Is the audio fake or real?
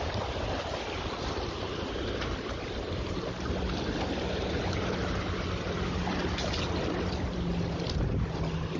real